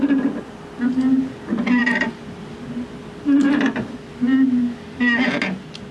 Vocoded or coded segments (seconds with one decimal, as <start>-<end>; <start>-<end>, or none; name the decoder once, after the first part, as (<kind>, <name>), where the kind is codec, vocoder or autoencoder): none